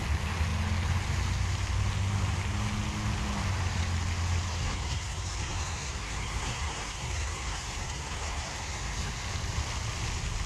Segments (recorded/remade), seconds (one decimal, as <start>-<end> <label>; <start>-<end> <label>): 0.0-4.5 recorded; 4.5-9.1 remade; 9.1-10.5 recorded